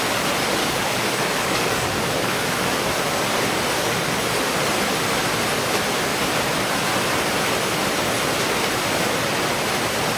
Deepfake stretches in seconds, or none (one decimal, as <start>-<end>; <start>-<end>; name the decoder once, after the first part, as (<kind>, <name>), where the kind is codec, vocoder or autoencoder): 0.6-2.9 (codec, DAC)